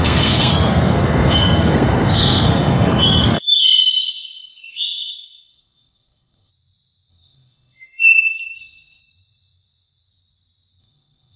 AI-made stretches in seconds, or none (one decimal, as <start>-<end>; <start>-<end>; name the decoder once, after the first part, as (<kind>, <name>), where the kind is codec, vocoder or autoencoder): 0.0-6.5 (codec, SNAC); 7.1-9.0; 10.8-11.4